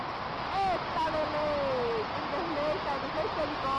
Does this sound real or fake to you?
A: real